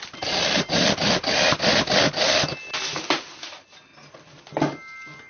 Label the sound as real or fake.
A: real